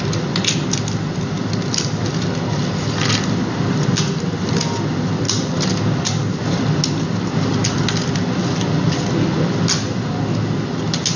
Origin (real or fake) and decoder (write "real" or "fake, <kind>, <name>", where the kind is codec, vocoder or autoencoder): real